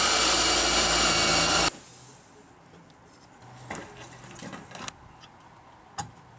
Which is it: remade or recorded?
recorded